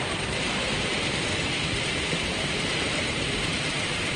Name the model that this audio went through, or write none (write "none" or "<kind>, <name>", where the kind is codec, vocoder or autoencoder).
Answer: vocoder, BigVGAN v2